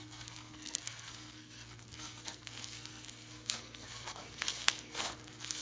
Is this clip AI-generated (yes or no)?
yes